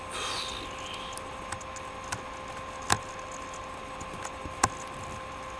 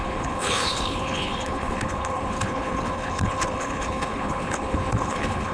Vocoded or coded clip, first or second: second